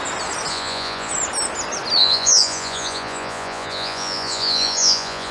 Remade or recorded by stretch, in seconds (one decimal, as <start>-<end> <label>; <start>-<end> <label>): 0.0-0.5 recorded; 0.5-1.1 remade; 1.1-2.0 recorded; 2.0-5.3 remade